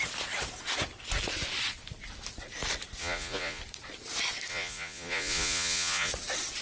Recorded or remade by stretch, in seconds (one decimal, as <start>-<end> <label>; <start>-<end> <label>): 0.0-3.0 recorded; 3.0-3.6 remade; 3.6-4.5 recorded; 4.5-6.1 remade; 6.1-6.6 recorded